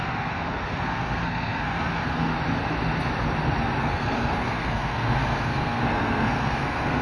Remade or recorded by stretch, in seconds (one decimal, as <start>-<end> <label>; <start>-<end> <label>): 0.0-2.3 remade; 2.3-3.8 recorded; 3.8-7.0 remade